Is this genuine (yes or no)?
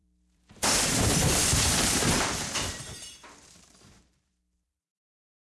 no